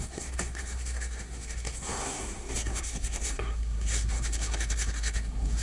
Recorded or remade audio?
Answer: remade